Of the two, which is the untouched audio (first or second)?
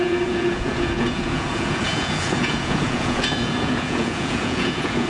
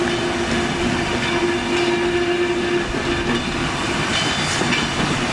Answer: second